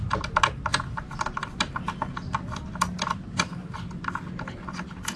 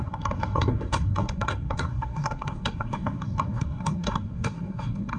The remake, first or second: second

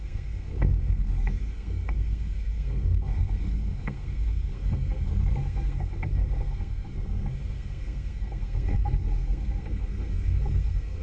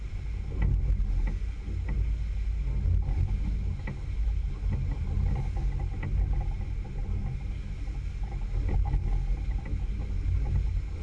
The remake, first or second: first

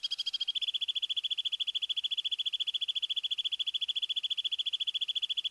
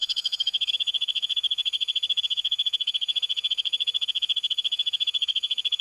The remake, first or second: second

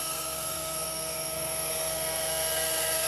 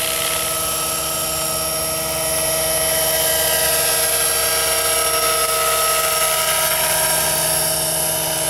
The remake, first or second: first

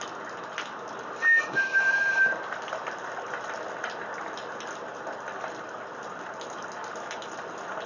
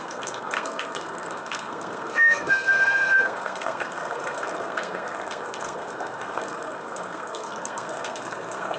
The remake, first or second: second